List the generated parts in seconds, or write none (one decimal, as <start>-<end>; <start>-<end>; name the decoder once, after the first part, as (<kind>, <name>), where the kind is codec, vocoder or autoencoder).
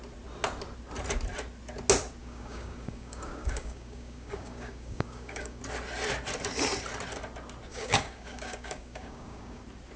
2.2-5.6 (codec, DAC); 7.7-9.6